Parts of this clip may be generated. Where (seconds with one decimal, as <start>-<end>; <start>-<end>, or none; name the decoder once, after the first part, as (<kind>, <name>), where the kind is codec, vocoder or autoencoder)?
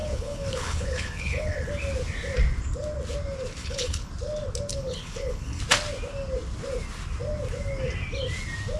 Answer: 0.0-1.7 (codec, HILCodec); 3.6-4.1; 4.7-5.6